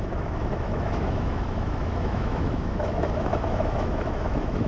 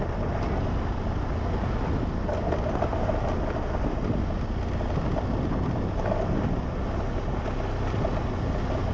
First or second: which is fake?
first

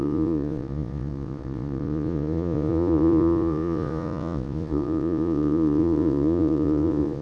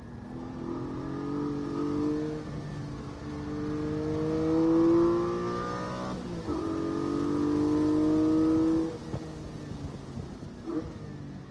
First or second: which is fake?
first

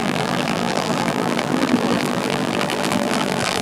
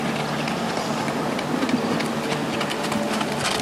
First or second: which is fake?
first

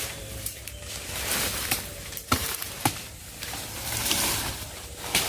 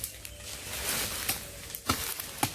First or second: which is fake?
first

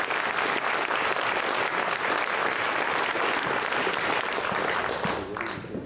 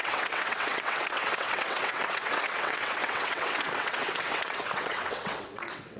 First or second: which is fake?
second